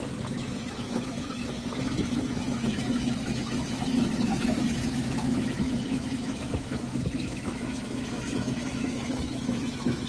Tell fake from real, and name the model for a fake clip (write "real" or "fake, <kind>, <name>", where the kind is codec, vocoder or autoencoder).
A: fake, autoencoder, DAC-VAE